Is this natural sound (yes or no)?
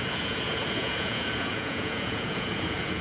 no